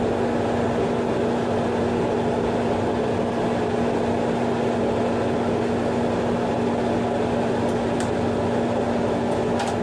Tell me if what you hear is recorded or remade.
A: recorded